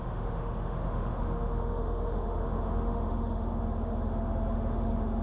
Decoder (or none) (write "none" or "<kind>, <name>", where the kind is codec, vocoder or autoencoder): autoencoder, DAC-VAE